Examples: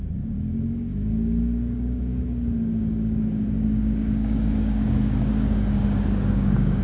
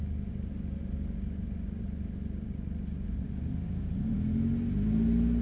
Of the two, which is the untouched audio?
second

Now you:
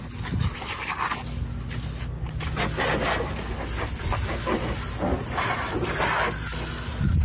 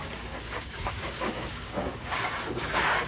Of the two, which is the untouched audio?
first